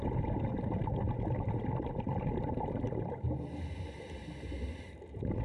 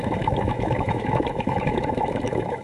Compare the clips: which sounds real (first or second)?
first